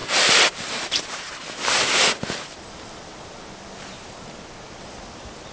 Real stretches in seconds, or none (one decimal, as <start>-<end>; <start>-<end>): 1.0-5.5

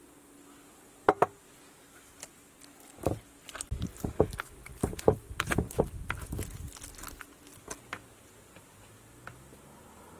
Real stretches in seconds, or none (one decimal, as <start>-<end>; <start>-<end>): 0.0-10.2

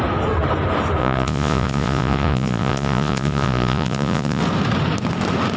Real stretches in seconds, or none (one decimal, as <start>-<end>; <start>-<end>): 0.0-1.0; 4.4-5.6

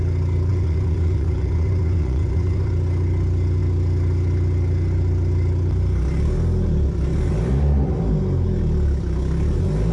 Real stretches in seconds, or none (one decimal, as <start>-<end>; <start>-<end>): 0.0-0.5; 2.7-9.9

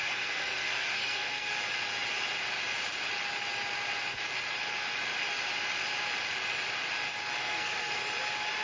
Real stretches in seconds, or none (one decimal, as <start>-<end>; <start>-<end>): 1.5-7.4; 8.0-8.6

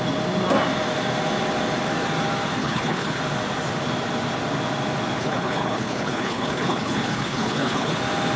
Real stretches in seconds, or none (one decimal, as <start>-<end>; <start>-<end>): 0.0-2.6; 3.2-5.2; 8.0-8.4

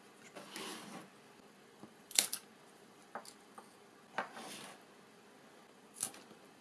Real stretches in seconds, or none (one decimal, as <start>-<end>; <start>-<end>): 0.0-6.6

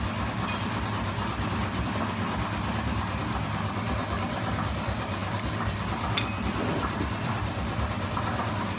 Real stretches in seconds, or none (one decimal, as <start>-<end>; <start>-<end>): 0.0-8.8